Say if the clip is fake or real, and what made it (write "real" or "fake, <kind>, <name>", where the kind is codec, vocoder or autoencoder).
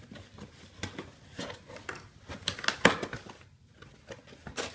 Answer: real